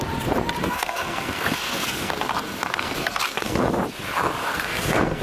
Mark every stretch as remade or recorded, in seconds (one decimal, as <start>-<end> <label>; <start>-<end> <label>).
0.0-0.6 recorded; 0.6-3.7 remade; 3.7-4.4 recorded; 4.4-5.2 remade